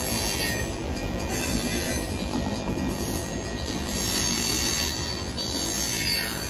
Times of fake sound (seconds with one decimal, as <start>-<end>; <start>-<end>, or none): 0.0-6.5